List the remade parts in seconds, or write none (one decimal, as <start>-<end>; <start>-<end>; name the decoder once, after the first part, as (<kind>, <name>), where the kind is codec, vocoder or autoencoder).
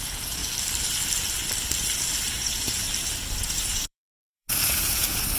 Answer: 0.0-0.4 (vocoder, Vocos); 2.3-2.8; 3.4-5.4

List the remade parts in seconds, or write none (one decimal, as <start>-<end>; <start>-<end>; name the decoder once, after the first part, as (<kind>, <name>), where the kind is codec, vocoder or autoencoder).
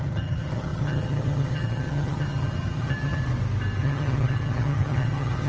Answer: 0.0-3.2 (vocoder, HiFi-GAN); 3.8-5.5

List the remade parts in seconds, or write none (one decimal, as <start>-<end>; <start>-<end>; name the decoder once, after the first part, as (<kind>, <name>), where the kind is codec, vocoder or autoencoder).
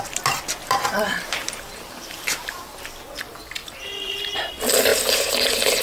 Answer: 0.6-2.7 (vocoder, BigVGAN v2); 3.6-4.4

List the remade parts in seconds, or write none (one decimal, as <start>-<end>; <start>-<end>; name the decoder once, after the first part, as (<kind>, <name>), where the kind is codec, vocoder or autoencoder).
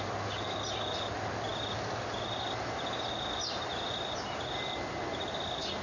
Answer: 1.5-4.1 (vocoder, BigVGAN v2)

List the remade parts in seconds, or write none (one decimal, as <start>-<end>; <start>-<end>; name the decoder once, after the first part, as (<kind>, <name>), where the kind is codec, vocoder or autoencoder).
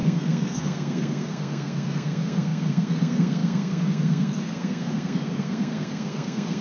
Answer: 0.0-6.6 (codec, SNAC)